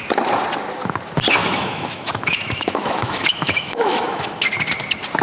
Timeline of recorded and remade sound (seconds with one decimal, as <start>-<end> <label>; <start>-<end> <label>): 0.0-1.4 recorded; 1.4-4.3 remade; 4.3-5.2 recorded